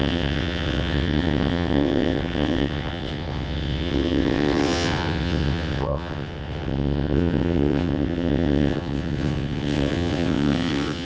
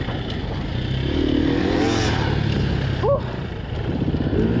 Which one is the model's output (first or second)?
first